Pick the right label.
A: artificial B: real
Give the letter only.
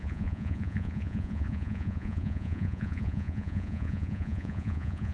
A